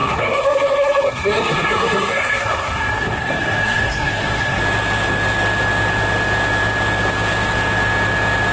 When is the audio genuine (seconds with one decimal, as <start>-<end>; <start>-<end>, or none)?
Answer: 4.6-8.5

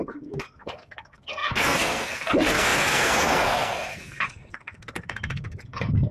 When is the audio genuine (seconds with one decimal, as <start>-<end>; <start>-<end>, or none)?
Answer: none

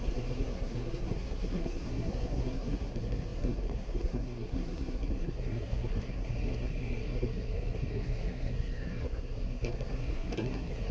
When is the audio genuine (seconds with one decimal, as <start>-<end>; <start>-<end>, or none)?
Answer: none

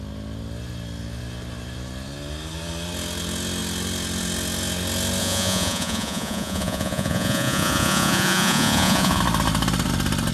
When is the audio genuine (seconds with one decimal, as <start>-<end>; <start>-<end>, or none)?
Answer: 0.0-5.2; 9.2-10.3

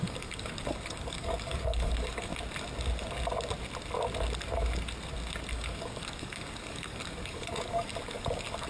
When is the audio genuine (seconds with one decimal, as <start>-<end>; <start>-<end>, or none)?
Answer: 2.3-5.5